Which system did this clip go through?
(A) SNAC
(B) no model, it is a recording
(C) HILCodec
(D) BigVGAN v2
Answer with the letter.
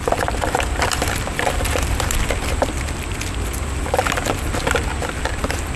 D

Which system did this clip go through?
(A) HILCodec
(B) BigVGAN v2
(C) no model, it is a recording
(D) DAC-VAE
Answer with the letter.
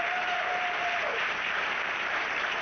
B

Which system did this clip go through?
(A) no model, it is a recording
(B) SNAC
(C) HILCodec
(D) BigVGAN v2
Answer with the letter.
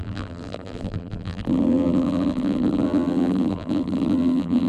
D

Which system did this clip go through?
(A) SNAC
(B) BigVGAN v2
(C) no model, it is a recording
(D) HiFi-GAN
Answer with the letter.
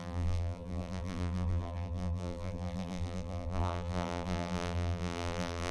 B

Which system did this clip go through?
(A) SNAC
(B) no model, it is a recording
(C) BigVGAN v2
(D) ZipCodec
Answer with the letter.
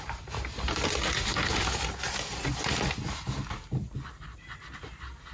B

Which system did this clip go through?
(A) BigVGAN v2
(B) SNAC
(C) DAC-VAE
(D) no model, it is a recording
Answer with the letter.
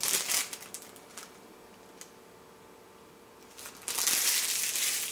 D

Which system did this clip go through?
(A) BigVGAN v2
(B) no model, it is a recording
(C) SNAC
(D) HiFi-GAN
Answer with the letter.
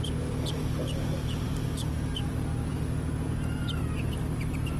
B